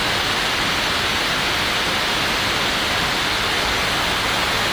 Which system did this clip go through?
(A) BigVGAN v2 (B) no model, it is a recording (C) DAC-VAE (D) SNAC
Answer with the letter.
B